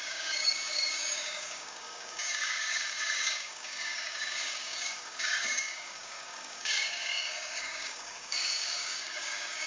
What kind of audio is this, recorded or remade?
remade